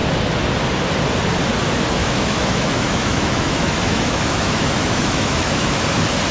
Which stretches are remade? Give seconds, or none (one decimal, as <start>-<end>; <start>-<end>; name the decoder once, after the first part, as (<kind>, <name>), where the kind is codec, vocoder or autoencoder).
2.0-5.8 (autoencoder, DAC-VAE)